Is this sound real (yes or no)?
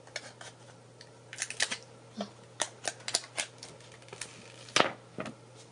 yes